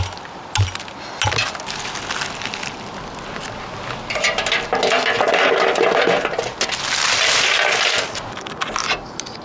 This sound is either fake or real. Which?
real